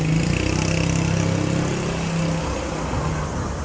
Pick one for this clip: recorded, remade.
recorded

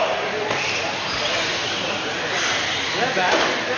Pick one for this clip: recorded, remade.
recorded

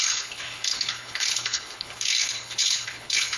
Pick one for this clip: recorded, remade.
remade